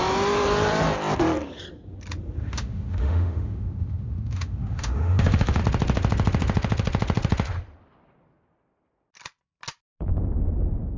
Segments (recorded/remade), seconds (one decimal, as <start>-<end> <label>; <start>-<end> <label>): 0.0-2.4 recorded; 2.4-5.6 remade; 5.6-11.0 recorded